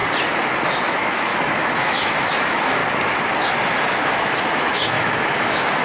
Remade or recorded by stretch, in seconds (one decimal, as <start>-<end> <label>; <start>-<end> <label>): 0.0-0.7 recorded; 0.7-1.3 remade; 1.3-1.8 recorded; 1.8-2.8 remade; 2.8-4.4 recorded; 4.4-5.8 remade